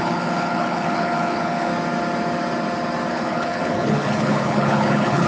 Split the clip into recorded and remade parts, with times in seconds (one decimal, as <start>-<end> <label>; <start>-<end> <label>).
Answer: 0.0-1.7 remade; 1.7-3.1 recorded; 3.1-5.3 remade

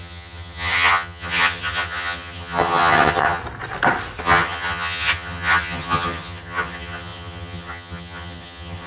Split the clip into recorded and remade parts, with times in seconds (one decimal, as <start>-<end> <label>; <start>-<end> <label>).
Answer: 0.0-3.4 remade; 3.4-4.2 recorded; 4.2-8.9 remade